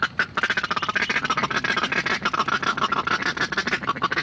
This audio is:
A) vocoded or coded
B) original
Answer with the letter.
B